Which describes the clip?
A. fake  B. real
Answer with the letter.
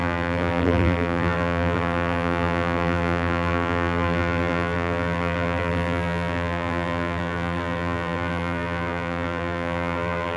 A